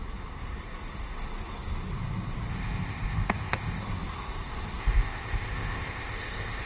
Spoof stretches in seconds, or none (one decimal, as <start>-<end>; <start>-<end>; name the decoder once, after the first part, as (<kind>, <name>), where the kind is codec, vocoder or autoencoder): 2.5-3.8 (codec, ZipCodec); 4.8-6.7